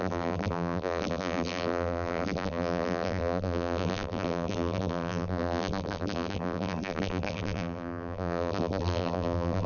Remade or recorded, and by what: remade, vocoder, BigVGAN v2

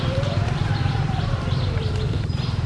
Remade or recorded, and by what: remade, vocoder, BigVGAN v2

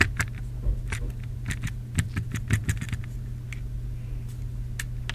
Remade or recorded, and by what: recorded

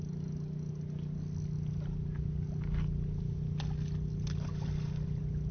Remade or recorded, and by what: recorded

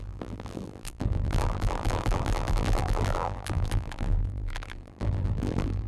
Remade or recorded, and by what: remade, vocoder, BigVGAN v2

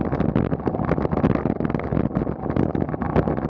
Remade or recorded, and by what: recorded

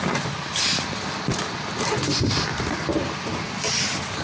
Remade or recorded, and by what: recorded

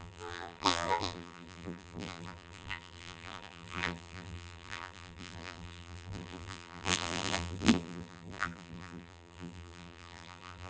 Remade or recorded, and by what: remade, vocoder, BigVGAN v2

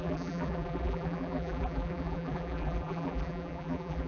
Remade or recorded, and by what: remade, vocoder, BigVGAN v2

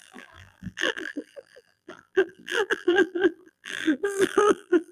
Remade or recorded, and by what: remade, vocoder, BigVGAN v2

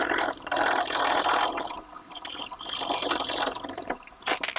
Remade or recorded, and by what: remade, vocoder, BigVGAN v2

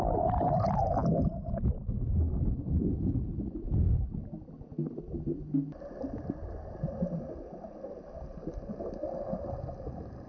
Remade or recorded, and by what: recorded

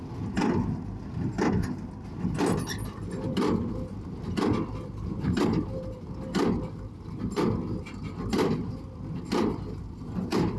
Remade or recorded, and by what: recorded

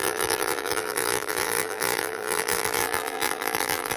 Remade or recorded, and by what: remade, vocoder, BigVGAN v2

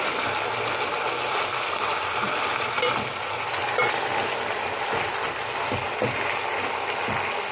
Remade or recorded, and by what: recorded